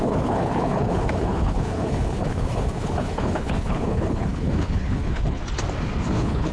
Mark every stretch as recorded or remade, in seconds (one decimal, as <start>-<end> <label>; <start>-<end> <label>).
0.0-5.4 remade; 5.4-6.1 recorded; 6.1-6.5 remade